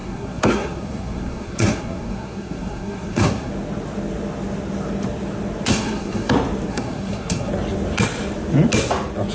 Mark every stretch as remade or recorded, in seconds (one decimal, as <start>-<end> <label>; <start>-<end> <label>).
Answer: 0.0-3.5 remade; 3.5-5.7 recorded; 5.7-6.3 remade; 6.3-6.7 recorded; 6.7-7.5 remade; 7.5-9.3 recorded